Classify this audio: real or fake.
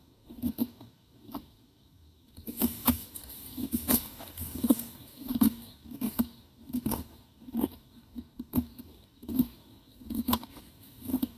fake